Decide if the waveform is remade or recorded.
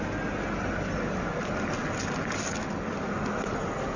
recorded